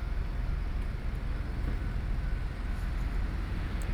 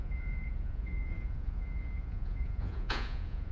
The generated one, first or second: second